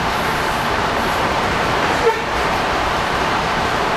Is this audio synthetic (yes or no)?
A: yes